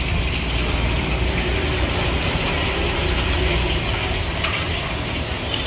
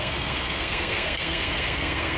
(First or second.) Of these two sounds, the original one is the first